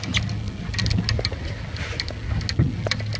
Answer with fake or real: real